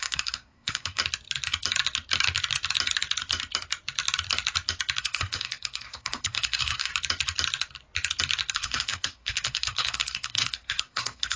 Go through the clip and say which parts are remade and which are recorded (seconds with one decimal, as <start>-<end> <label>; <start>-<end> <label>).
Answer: 0.0-1.0 remade; 1.0-5.0 recorded; 5.0-6.9 remade; 6.9-8.5 recorded; 8.5-11.4 remade

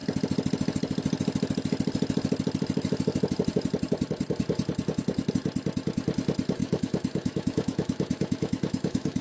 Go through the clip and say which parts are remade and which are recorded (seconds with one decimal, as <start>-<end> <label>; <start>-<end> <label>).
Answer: 0.0-6.6 recorded; 6.6-9.2 remade

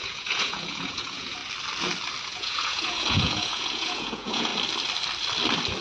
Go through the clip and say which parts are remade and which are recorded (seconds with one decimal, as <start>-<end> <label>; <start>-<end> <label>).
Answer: 0.0-1.4 remade; 1.4-2.2 recorded; 2.2-4.5 remade; 4.5-5.8 recorded

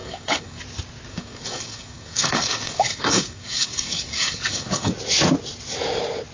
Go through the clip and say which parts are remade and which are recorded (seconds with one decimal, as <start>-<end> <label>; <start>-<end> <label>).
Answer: 0.0-0.6 remade; 0.6-1.1 recorded; 1.1-4.9 remade; 4.9-6.3 recorded

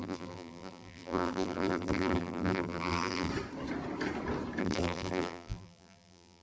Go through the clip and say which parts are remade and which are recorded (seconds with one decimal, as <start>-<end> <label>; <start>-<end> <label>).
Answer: 0.0-3.3 remade; 3.3-4.6 recorded; 4.6-6.4 remade